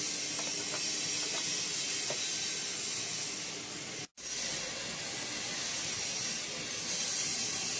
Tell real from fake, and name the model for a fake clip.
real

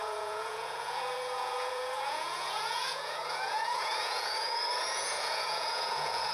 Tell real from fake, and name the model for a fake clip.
fake, vocoder, Vocos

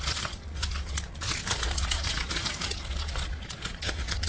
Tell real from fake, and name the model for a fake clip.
fake, vocoder, Vocos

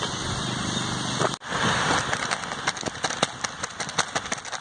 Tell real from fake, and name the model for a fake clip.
real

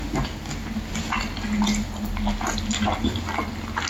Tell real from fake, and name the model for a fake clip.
real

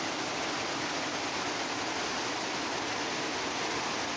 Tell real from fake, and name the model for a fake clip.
real